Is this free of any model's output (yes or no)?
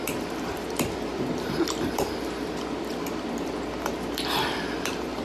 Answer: no